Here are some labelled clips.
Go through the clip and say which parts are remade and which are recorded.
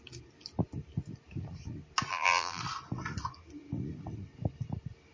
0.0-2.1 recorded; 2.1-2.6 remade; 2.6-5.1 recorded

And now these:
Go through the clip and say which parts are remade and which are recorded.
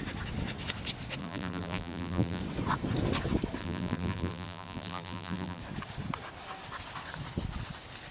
0.0-1.2 recorded; 1.2-2.4 remade; 2.4-3.6 recorded; 3.6-5.6 remade; 5.6-8.1 recorded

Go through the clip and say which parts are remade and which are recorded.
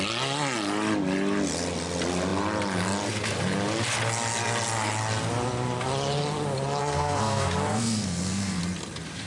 0.0-6.8 recorded; 6.8-8.6 remade; 8.6-9.3 recorded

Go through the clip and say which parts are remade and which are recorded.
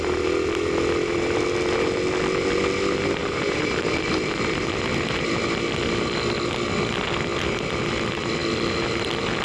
0.0-3.2 recorded; 3.2-4.0 remade; 4.0-9.4 recorded